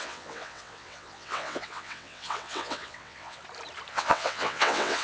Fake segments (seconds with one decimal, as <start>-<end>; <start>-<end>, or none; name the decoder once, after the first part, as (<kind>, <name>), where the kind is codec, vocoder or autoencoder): 0.0-3.4 (vocoder, WaveNeXt); 3.9-5.0